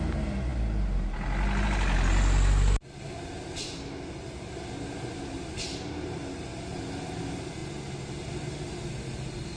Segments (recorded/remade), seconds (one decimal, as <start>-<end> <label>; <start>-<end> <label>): 0.0-9.6 recorded

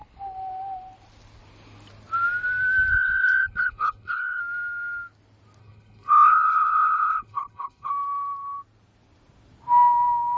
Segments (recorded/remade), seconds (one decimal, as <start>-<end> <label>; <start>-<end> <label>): 0.0-2.9 recorded; 2.9-4.4 remade; 4.4-5.6 recorded; 5.6-7.9 remade; 7.9-10.4 recorded

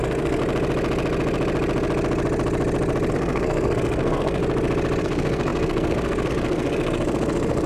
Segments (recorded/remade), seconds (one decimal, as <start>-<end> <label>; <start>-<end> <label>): 0.0-0.4 remade; 0.4-3.1 recorded; 3.1-4.4 remade; 4.4-5.0 recorded; 5.0-7.7 remade

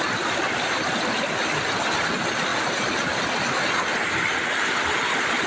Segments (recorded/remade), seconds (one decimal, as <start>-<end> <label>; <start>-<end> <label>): 0.0-5.5 recorded

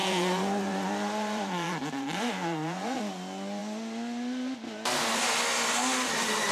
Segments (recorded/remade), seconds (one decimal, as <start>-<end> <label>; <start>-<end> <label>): 0.0-3.0 remade; 3.0-6.5 recorded

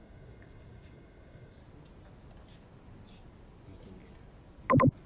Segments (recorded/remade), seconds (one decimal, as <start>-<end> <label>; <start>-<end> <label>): 0.0-1.6 remade; 1.6-5.1 recorded

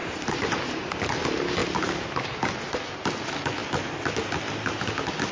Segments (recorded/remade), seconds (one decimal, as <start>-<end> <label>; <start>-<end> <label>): 0.0-0.6 remade; 0.6-5.3 recorded

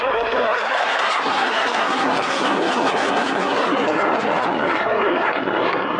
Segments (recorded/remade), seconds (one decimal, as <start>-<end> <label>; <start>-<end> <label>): 0.0-6.0 remade